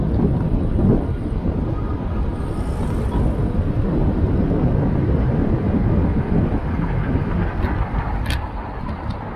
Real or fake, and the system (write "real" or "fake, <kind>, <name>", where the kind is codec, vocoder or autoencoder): real